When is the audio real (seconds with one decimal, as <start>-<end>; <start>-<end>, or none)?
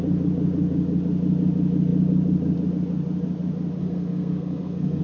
0.0-3.8